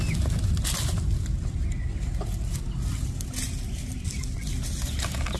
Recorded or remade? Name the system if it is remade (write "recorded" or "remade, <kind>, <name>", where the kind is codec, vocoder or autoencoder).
recorded